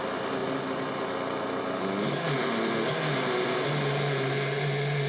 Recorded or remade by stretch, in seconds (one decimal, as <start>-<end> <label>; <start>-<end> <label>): 0.0-5.1 recorded